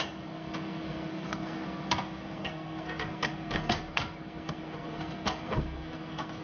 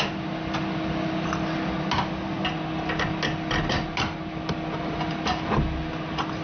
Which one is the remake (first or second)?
first